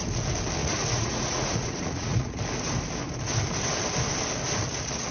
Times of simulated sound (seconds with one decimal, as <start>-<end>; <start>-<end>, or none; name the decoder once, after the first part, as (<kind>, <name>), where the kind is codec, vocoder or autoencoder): 0.6-2.4 (vocoder, Vocos)